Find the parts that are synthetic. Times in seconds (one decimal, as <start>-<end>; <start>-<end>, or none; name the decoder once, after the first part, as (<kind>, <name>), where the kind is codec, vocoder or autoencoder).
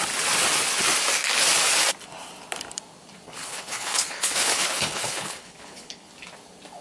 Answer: 3.4-6.1 (codec, HILCodec)